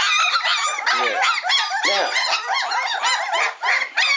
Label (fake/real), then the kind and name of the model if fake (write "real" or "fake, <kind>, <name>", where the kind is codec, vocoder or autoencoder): real